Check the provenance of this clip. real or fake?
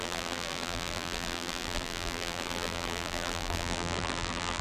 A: fake